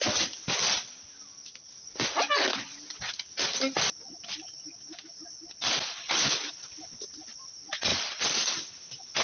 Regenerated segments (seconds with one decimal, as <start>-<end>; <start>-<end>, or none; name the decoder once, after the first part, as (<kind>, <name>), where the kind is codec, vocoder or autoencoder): none